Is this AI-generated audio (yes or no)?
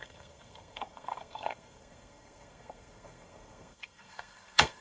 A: yes